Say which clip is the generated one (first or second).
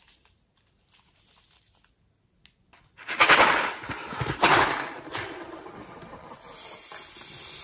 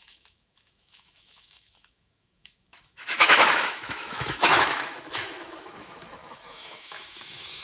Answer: second